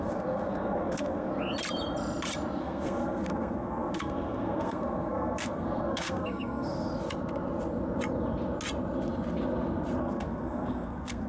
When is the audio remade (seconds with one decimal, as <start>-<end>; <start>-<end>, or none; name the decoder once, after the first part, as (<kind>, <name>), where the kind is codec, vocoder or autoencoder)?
0.0-1.3 (codec, SNAC); 2.6-6.9; 10.0-11.3